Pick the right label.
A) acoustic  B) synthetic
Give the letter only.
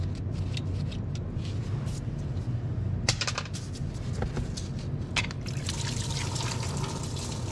A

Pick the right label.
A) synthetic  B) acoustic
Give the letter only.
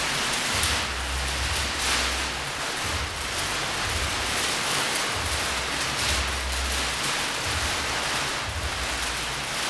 B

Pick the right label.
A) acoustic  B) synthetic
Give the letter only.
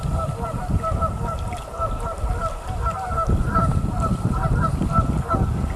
A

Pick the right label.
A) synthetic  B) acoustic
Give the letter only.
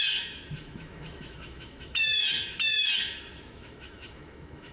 A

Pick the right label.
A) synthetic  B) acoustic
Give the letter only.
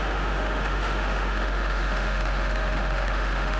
A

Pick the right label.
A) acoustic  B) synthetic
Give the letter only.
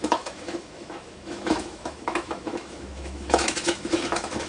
B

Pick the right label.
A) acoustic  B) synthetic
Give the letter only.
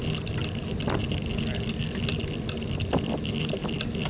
A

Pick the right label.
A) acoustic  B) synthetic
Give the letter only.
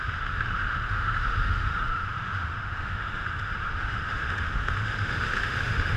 B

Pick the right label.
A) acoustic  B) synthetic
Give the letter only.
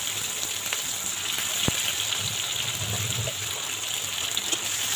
A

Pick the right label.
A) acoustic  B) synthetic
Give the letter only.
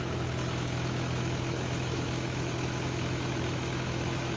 B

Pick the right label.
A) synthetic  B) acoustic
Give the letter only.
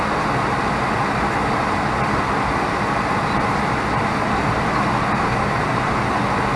B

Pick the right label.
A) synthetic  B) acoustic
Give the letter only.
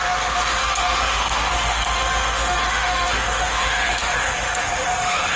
A